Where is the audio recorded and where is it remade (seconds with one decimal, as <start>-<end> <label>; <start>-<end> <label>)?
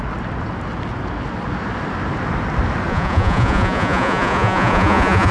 0.0-2.9 recorded; 2.9-5.3 remade